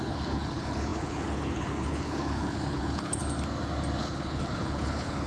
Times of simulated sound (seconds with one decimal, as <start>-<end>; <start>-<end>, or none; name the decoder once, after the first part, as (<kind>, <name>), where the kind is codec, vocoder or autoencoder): 0.0-3.2 (codec, HILCodec); 4.0-5.3